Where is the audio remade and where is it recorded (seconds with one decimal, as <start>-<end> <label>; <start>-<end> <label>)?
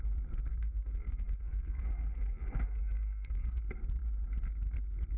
0.0-0.5 recorded; 0.5-3.6 remade; 3.6-5.2 recorded